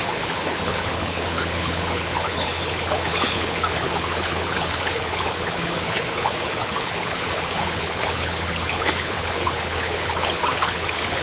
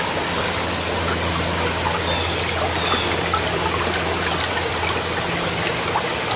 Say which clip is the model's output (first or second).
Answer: first